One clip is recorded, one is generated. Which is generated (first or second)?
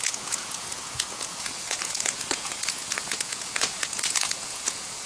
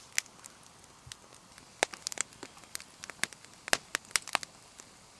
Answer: first